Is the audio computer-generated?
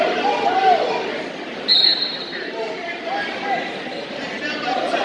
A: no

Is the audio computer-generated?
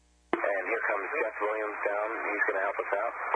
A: no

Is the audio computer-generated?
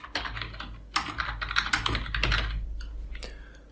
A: no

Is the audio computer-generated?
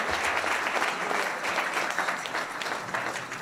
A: no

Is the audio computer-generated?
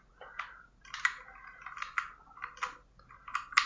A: no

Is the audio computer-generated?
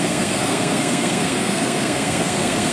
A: yes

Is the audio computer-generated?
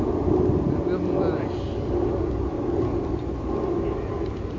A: no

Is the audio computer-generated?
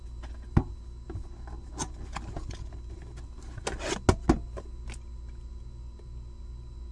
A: no